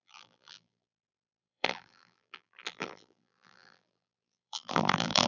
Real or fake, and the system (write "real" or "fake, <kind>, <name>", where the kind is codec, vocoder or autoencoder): fake, vocoder, BigVGAN v2